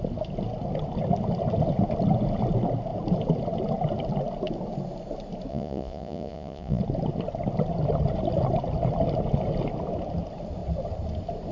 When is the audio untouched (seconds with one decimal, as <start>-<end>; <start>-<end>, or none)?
0.0-5.5; 6.8-11.5